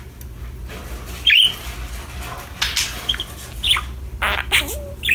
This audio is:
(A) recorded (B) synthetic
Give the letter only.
A